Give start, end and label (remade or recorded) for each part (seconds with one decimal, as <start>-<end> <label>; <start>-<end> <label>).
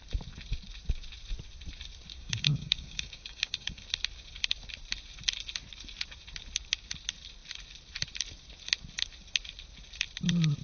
0.0-2.1 recorded; 2.1-3.8 remade; 3.8-10.6 recorded